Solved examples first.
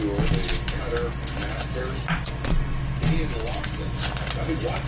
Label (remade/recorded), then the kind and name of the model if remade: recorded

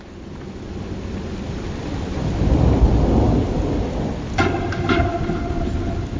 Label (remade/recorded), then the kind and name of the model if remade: recorded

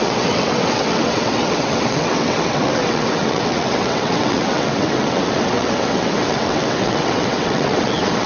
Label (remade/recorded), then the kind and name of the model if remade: remade, vocoder, WaveNeXt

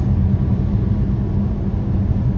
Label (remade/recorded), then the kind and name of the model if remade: recorded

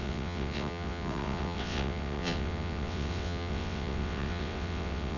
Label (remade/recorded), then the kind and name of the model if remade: remade, vocoder, WaveNeXt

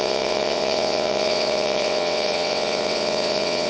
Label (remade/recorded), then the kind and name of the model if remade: remade, vocoder, WaveNeXt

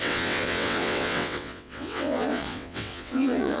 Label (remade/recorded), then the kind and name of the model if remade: remade, vocoder, WaveNeXt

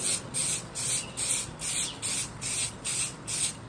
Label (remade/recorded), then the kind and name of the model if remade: recorded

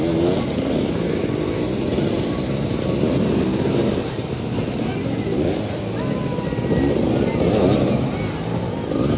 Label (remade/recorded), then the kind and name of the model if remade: recorded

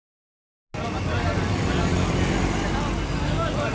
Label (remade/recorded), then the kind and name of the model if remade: recorded